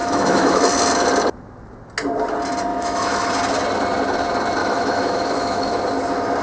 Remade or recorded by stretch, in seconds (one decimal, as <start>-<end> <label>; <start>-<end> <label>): 0.0-0.6 remade; 0.6-2.7 recorded; 2.7-3.3 remade; 3.3-4.6 recorded; 4.6-5.8 remade; 5.8-6.4 recorded